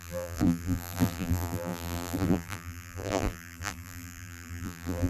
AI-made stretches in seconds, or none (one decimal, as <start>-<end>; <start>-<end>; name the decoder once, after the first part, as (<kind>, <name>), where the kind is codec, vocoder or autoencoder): 0.0-5.1 (vocoder, BigVGAN v2)